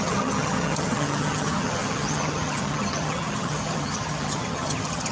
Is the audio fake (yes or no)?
yes